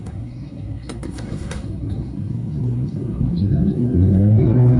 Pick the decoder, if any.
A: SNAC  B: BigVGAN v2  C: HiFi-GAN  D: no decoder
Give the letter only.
A